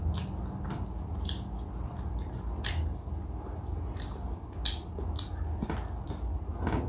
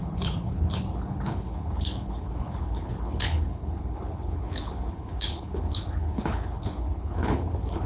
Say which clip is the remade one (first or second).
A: second